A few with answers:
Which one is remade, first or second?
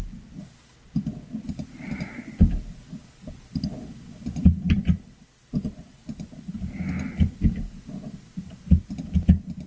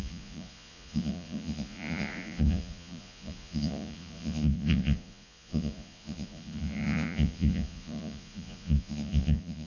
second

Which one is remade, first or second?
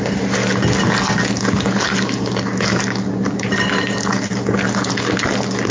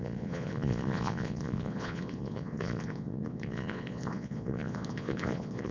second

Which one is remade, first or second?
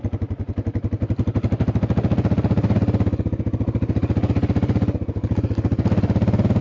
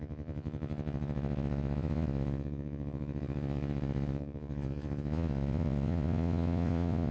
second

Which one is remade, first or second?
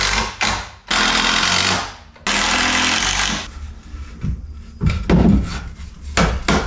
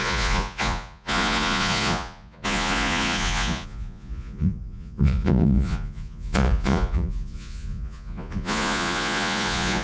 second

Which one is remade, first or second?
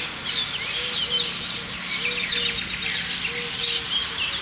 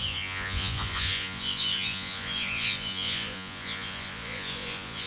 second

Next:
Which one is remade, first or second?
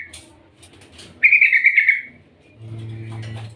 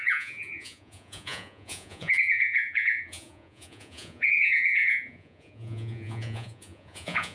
second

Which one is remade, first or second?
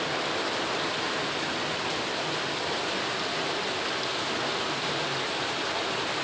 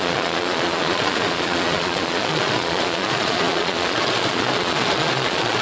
second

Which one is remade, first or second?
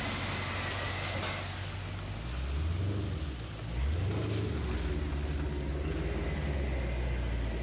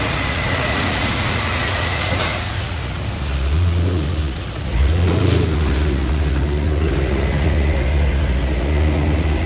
second